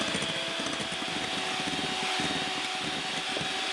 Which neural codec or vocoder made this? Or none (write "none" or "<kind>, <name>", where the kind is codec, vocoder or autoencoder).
none